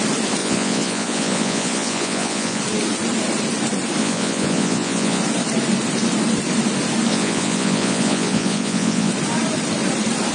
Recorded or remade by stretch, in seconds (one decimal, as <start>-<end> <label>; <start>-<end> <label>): 0.0-0.4 recorded; 0.4-2.6 remade; 2.6-4.0 recorded; 4.0-5.2 remade; 5.2-7.1 recorded; 7.1-9.1 remade; 9.1-10.3 recorded